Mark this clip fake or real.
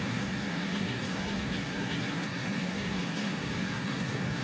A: fake